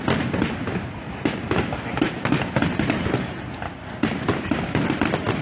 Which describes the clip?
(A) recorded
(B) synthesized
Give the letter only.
A